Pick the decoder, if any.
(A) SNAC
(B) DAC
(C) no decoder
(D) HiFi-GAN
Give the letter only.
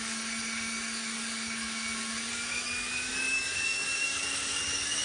B